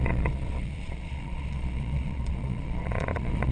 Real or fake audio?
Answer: fake